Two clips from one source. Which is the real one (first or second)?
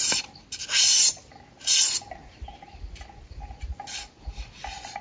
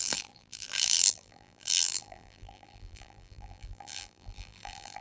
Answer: first